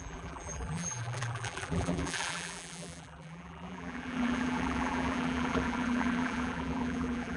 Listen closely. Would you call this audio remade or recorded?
remade